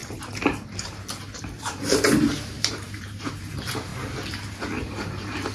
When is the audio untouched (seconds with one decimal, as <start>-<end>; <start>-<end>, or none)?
3.9-4.8